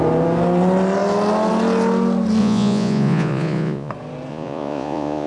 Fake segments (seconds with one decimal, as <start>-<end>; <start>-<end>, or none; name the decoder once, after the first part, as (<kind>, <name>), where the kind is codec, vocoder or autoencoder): 2.4-3.9 (vocoder, Vocos); 4.3-5.3